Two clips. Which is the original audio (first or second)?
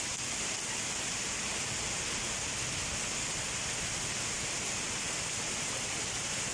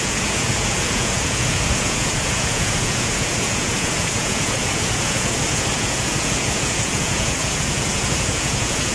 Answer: first